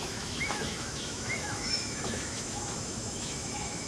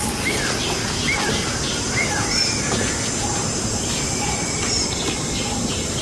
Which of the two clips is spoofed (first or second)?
first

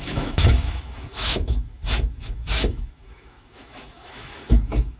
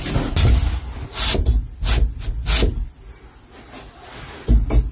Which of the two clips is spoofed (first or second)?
first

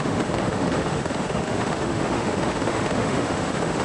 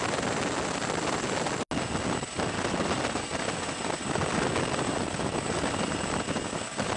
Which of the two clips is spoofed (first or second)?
first